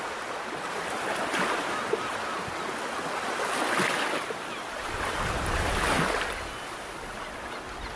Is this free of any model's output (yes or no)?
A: yes